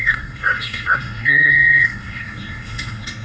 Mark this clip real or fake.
fake